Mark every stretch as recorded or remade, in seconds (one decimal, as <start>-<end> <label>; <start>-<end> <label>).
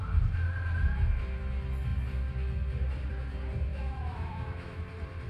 0.0-3.7 recorded; 3.7-4.8 remade; 4.8-5.3 recorded